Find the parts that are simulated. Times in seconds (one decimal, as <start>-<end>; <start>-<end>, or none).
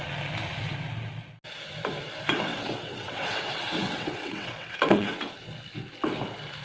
2.5-5.3